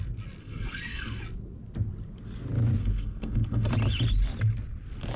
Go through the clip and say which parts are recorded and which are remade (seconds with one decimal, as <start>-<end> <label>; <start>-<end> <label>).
0.0-0.4 recorded; 0.4-1.2 remade; 1.2-2.8 recorded; 2.8-3.7 remade; 3.7-5.2 recorded